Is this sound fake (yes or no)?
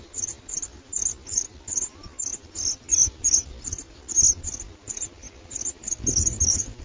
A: no